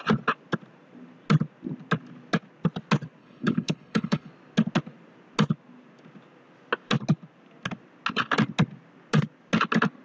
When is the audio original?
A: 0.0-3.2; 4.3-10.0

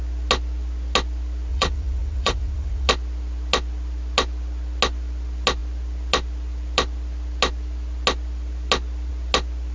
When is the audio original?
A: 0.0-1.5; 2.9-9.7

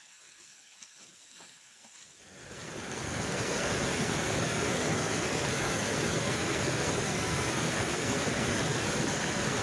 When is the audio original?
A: none